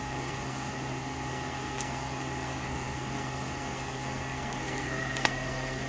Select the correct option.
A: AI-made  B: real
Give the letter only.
A